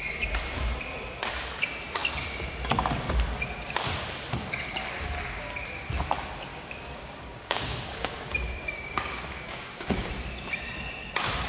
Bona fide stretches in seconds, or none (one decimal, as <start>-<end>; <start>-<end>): 0.0-6.5; 10.1-11.5